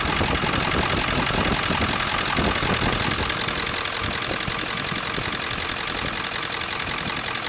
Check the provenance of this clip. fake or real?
real